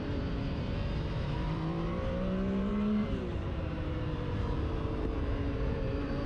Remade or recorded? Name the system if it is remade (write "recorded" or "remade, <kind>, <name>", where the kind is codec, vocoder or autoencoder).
remade, vocoder, BigVGAN v2